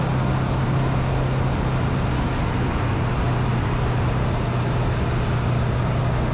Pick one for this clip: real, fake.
real